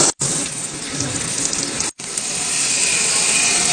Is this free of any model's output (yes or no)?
yes